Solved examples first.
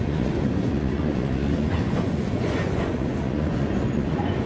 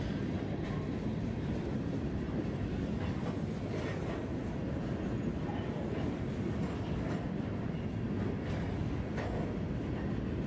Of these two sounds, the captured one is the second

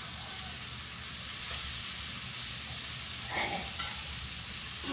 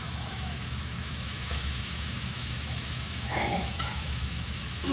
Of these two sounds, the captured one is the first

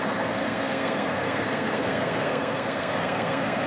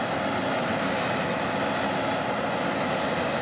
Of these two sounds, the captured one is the second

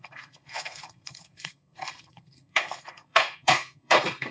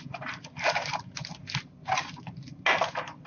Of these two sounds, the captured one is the second